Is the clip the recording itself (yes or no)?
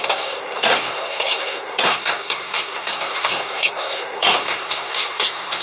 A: no